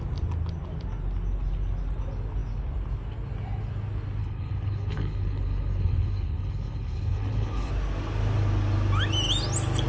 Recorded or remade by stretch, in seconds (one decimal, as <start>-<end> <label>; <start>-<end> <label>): 0.0-4.2 recorded; 4.2-7.7 remade; 7.7-9.9 recorded